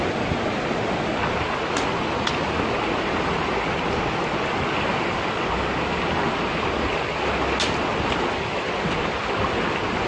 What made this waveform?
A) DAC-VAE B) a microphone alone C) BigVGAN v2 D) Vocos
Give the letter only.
B